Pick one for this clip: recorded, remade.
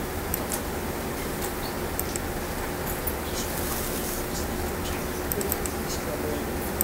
recorded